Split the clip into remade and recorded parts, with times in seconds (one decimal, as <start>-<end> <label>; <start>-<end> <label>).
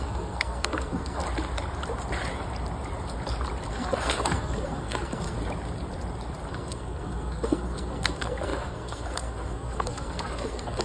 0.0-1.2 remade; 1.2-3.7 recorded; 3.7-5.4 remade; 5.4-6.5 recorded; 6.5-10.8 remade